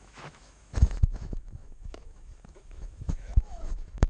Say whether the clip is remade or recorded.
remade